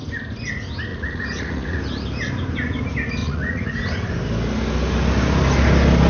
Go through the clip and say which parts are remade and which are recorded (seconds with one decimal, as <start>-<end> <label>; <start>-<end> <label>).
0.0-0.9 recorded; 0.9-1.8 remade; 1.8-3.2 recorded; 3.2-3.7 remade; 3.7-6.1 recorded